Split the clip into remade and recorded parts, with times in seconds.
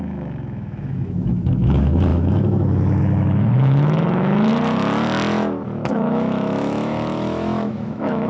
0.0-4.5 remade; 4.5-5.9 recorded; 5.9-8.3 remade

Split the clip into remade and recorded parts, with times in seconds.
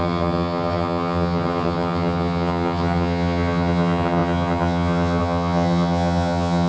0.0-6.7 remade